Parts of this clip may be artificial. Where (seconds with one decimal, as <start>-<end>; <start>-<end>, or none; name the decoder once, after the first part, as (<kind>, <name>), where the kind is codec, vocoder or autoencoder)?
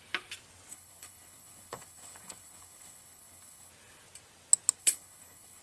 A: 0.7-3.7 (codec, HILCodec); 4.8-5.6